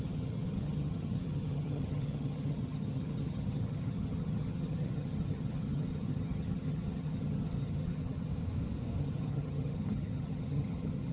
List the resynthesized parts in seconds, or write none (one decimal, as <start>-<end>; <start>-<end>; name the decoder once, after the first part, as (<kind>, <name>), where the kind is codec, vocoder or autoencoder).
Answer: 0.0-8.3 (vocoder, HiFi-GAN); 9.0-11.1